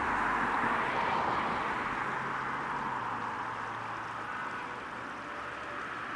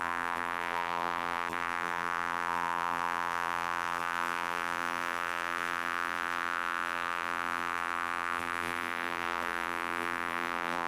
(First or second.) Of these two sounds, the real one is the first